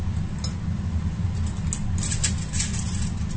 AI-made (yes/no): no